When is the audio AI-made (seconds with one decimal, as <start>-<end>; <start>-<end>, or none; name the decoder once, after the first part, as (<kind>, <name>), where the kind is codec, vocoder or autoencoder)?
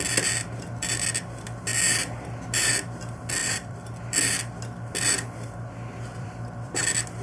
3.4-4.0 (vocoder, BigVGAN v2); 6.1-6.8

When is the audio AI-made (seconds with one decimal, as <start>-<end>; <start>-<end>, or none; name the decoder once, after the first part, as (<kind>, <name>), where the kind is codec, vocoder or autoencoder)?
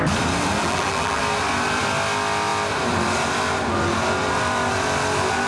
0.6-1.2 (vocoder, BigVGAN v2)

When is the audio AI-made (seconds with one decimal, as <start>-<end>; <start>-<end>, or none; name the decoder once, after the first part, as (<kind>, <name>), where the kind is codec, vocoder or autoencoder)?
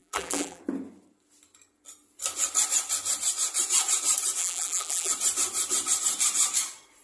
0.0-0.6 (vocoder, BigVGAN v2); 4.4-5.1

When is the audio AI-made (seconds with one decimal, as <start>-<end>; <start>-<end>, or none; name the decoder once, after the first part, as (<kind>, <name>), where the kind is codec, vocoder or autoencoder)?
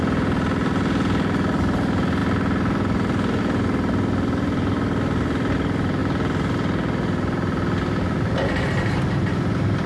none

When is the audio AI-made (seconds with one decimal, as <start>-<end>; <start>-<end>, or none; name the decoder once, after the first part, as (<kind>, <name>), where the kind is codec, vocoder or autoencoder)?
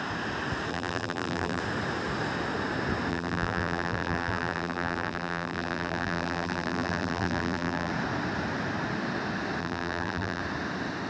0.7-1.6 (vocoder, BigVGAN v2); 3.1-7.9; 9.6-10.4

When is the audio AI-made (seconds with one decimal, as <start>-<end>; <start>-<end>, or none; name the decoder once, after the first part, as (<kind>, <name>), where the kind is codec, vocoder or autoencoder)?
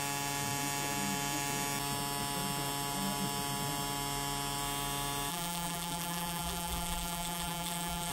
5.3-8.1 (vocoder, BigVGAN v2)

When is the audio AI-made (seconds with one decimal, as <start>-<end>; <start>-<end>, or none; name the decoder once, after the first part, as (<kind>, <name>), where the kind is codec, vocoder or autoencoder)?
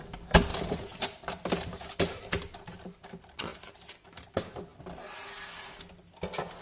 0.5-1.9 (vocoder, BigVGAN v2)